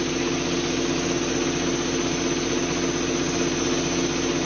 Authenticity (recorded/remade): recorded